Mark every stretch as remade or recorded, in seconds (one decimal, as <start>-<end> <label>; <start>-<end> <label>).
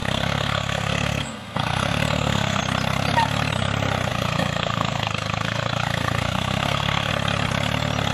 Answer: 0.0-2.6 remade; 2.6-4.1 recorded; 4.1-7.1 remade; 7.1-8.1 recorded